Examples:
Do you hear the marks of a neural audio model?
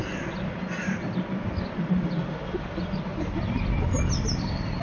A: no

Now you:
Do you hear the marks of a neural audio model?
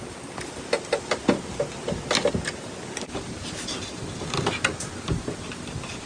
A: no